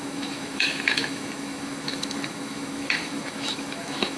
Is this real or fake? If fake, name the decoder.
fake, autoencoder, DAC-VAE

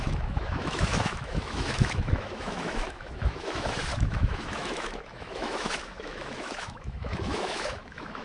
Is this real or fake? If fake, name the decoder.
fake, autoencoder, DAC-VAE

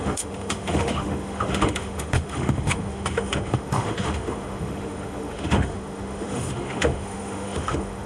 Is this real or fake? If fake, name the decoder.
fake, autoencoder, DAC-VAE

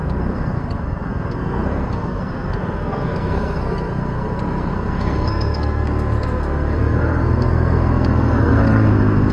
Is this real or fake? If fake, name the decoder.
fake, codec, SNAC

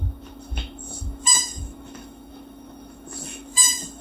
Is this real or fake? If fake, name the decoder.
fake, autoencoder, DAC-VAE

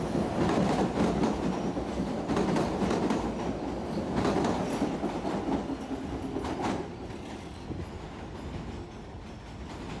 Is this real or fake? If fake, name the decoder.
real